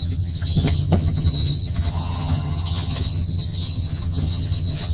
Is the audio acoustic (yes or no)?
no